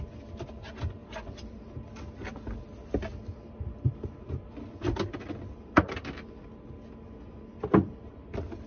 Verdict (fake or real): real